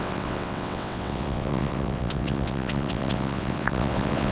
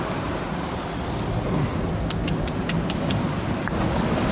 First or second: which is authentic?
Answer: second